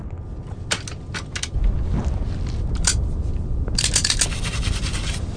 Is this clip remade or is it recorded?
recorded